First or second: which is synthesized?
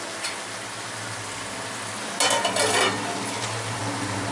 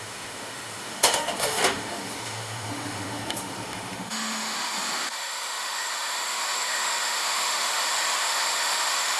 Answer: second